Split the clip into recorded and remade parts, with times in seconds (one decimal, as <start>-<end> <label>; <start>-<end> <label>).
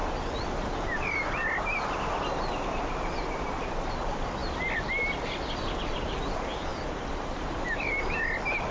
0.0-8.7 recorded